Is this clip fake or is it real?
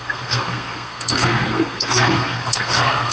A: fake